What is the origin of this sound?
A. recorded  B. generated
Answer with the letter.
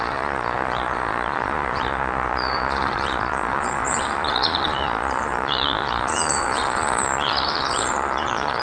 B